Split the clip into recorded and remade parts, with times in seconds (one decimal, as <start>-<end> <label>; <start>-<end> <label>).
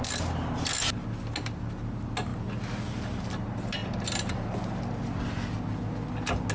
0.0-6.5 recorded